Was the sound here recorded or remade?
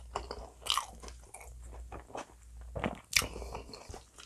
recorded